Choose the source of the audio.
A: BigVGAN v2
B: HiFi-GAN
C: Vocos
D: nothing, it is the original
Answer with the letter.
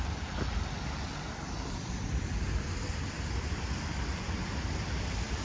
A